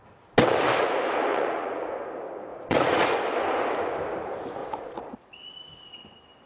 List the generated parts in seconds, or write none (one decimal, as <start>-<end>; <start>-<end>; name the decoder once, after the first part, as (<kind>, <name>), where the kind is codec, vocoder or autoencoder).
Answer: 1.3-2.0 (vocoder, Vocos); 2.5-3.1; 4.6-5.2